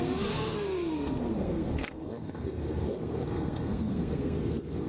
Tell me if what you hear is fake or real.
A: fake